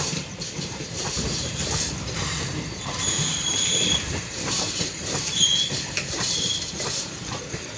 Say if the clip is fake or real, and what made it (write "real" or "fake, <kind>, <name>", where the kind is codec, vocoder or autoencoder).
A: fake, vocoder, BigVGAN v2